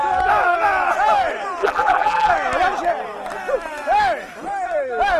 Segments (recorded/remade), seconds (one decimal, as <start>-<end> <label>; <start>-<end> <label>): 0.0-1.6 recorded; 1.6-2.3 remade; 2.3-5.2 recorded